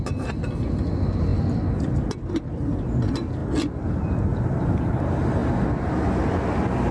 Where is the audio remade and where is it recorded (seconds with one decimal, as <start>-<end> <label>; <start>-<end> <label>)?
0.0-6.9 recorded